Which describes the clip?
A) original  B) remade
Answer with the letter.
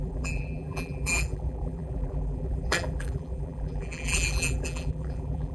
B